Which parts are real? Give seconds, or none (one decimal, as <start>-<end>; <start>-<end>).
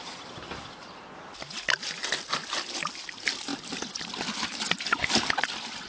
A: 0.0-5.9